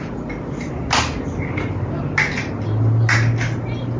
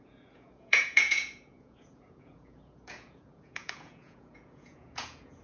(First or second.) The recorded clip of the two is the first